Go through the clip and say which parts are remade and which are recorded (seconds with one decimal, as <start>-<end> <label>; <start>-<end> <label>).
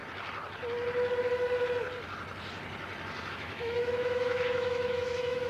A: 0.0-3.3 recorded; 3.3-5.5 remade